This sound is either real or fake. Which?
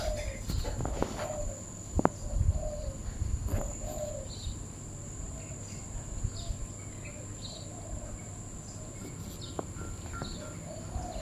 real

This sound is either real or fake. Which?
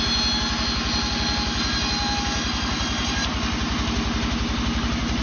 real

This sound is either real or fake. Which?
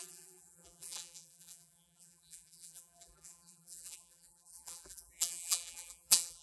fake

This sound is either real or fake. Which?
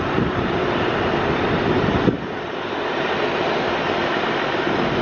fake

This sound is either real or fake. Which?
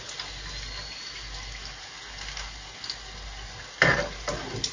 real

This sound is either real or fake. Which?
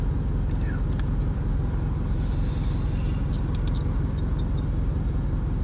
real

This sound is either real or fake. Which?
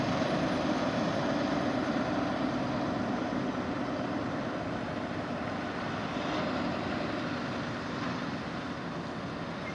real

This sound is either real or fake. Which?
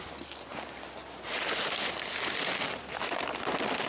real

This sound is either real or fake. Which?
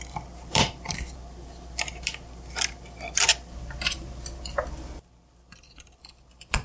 fake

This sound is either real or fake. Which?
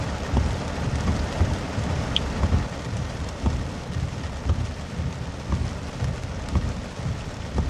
fake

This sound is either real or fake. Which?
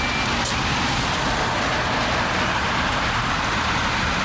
real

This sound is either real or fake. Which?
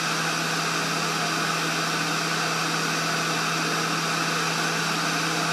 real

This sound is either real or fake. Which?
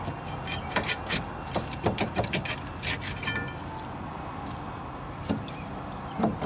real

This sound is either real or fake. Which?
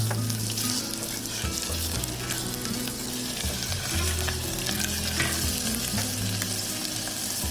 real